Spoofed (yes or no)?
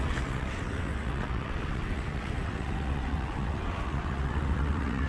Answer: yes